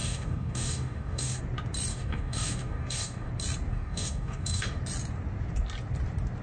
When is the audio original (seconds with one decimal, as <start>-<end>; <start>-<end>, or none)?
1.4-1.9; 3.3-3.7; 4.8-6.4